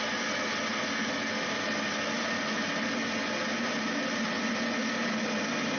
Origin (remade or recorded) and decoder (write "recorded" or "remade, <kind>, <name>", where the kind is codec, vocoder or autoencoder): recorded